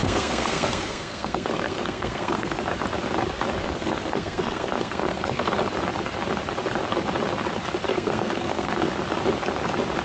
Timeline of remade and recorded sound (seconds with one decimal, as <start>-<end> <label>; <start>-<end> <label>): 0.0-2.6 remade; 2.6-3.6 recorded; 3.6-5.5 remade; 5.5-7.9 recorded; 7.9-8.9 remade; 8.9-10.0 recorded